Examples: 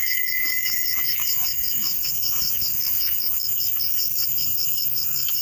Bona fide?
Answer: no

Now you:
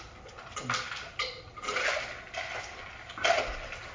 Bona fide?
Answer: yes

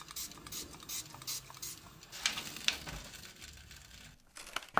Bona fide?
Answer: yes